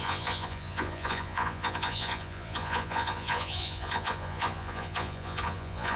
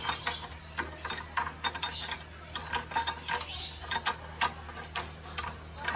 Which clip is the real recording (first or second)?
second